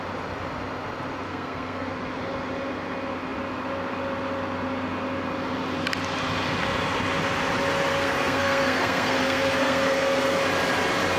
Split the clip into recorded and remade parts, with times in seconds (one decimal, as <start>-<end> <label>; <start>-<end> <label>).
0.0-1.3 recorded; 1.3-1.9 remade; 1.9-7.9 recorded; 7.9-10.4 remade; 10.4-11.2 recorded